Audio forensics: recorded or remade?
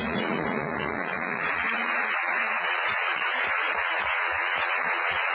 remade